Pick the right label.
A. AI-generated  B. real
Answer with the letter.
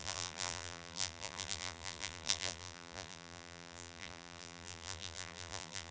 A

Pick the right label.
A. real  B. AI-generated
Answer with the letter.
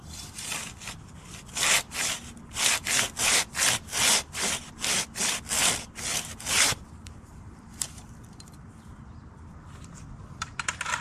B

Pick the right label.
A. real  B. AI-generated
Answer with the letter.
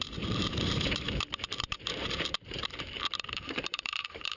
B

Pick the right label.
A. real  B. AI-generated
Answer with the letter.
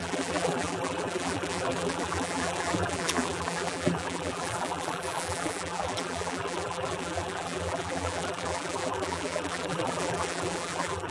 B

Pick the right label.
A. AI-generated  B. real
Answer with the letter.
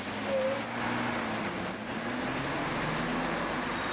B